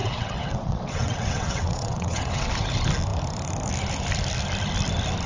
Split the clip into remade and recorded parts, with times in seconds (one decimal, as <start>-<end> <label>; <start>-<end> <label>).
0.0-2.5 remade; 2.5-5.3 recorded